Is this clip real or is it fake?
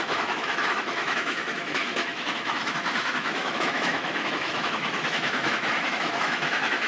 fake